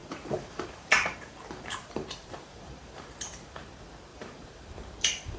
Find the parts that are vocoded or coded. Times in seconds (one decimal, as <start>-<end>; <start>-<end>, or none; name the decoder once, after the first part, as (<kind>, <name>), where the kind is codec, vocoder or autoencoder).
0.0-3.2 (vocoder, BigVGAN v2); 4.1-4.6